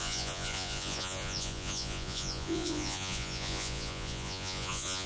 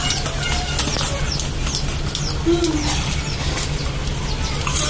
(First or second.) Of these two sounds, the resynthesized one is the first